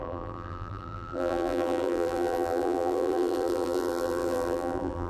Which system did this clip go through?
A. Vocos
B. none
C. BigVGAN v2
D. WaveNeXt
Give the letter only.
C